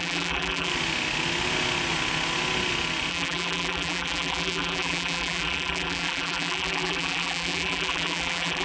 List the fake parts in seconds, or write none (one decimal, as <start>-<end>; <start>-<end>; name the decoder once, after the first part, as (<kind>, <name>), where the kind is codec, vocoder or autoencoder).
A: 0.0-0.7 (vocoder, BigVGAN v2); 3.1-8.6